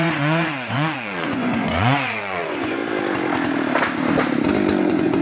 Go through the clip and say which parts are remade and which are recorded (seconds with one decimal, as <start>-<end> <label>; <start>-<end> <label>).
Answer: 0.0-2.8 remade; 2.8-4.8 recorded; 4.8-5.2 remade